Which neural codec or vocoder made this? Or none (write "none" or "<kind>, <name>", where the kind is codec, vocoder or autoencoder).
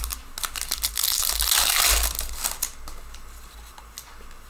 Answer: none